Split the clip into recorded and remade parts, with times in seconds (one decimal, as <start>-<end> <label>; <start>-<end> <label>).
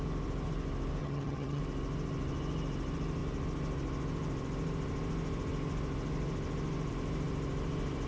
0.0-1.0 recorded; 1.0-1.6 remade; 1.6-8.1 recorded